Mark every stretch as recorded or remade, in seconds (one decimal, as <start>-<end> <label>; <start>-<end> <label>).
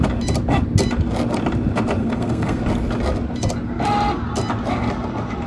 0.0-2.0 recorded; 2.0-2.6 remade; 2.6-5.5 recorded